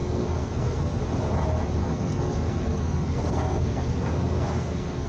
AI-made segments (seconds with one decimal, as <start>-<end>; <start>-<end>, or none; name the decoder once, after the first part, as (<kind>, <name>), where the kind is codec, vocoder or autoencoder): 0.0-1.0 (codec, SNAC); 1.8-5.1